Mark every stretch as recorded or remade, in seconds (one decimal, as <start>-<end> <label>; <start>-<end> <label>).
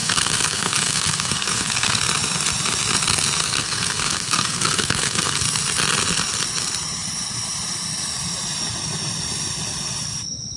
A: 0.0-2.0 remade; 2.0-3.4 recorded; 3.4-5.4 remade; 5.4-10.6 recorded